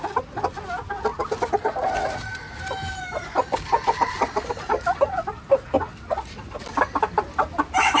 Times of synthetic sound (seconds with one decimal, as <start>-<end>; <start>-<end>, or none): none